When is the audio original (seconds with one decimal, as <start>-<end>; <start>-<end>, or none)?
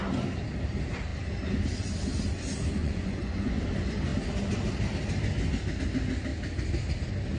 0.0-2.8; 3.6-7.4